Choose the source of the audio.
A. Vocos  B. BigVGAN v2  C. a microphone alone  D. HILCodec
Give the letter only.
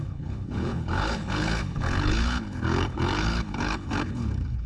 D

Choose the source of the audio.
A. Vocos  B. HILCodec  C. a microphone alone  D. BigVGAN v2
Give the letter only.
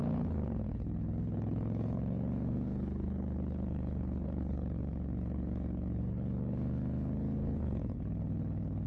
B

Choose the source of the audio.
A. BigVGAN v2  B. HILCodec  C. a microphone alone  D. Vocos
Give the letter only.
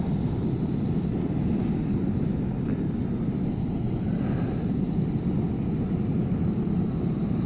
C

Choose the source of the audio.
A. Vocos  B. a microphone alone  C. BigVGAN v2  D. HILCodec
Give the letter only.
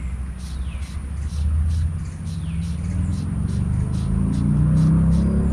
B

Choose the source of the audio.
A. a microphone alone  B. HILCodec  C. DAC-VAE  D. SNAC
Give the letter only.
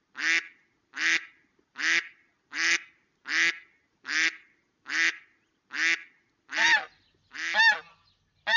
A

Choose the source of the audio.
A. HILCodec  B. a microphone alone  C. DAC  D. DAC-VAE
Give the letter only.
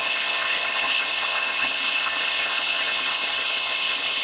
A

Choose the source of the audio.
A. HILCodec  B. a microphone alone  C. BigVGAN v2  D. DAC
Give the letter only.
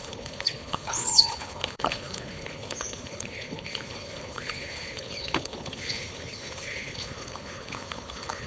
A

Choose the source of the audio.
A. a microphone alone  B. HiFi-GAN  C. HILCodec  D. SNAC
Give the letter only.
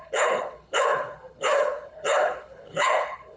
C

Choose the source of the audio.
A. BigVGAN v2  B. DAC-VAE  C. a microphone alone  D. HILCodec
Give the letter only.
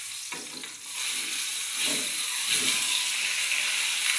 C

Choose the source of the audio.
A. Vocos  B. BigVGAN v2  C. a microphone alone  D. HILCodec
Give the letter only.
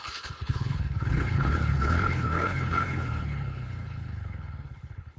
D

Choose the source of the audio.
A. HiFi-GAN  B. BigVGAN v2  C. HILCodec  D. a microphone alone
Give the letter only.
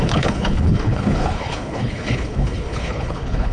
C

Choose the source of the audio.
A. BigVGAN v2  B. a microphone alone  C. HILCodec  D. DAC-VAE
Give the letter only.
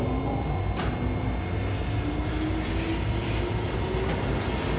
B